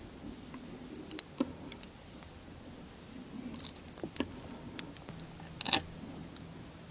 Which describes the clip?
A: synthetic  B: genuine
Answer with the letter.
B